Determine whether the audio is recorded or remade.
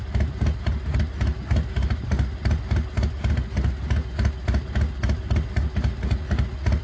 recorded